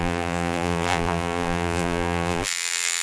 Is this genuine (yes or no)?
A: no